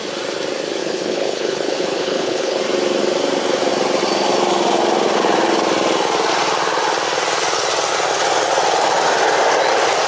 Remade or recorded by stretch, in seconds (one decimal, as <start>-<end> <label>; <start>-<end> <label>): 0.0-0.8 recorded; 0.8-2.6 remade; 2.6-10.1 recorded